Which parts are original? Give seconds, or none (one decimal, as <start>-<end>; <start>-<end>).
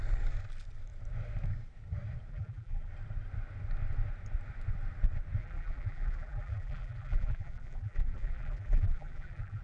0.0-2.3; 2.9-5.4